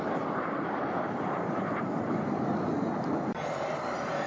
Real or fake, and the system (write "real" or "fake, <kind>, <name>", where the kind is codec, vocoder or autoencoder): fake, vocoder, BigVGAN v2